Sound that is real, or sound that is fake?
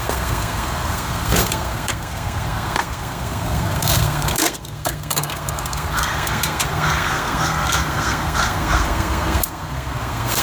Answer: fake